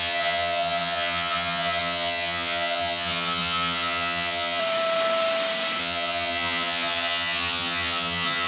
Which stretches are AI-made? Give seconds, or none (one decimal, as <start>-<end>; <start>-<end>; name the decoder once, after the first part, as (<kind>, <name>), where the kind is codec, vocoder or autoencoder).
0.0-4.6 (vocoder, HiFi-GAN); 5.8-8.5